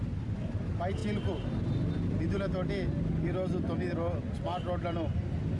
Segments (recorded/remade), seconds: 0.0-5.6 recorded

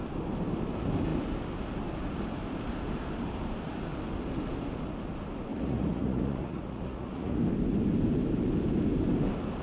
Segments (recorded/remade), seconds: 0.0-5.5 recorded; 5.5-7.4 remade; 7.4-9.6 recorded

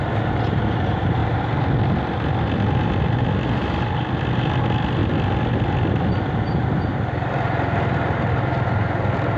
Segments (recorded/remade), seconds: 0.0-9.4 recorded